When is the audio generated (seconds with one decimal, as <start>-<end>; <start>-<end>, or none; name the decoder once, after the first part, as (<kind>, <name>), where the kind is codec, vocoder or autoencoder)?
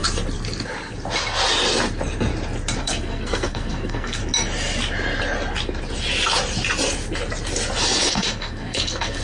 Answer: 2.8-4.2 (codec, SNAC); 8.1-9.2